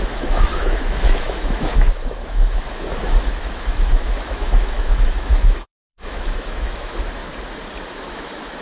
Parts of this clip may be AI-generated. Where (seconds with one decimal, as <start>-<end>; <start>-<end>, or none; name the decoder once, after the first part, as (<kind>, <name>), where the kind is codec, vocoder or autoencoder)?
0.0-7.2 (autoencoder, DAC-VAE); 7.9-8.6